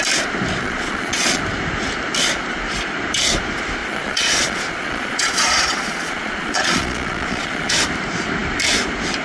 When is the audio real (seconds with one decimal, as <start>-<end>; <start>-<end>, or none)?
0.0-0.6; 1.4-3.8; 7.7-9.2